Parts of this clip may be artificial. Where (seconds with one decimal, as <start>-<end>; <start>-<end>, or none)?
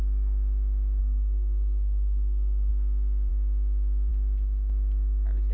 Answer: 1.0-2.7